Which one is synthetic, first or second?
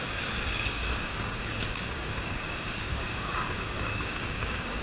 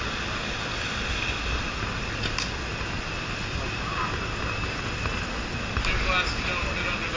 first